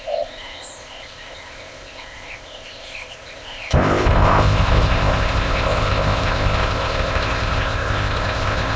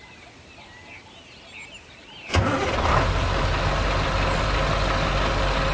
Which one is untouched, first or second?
second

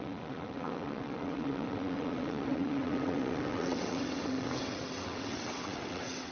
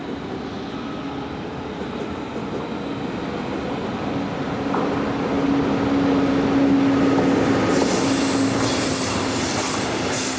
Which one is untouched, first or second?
second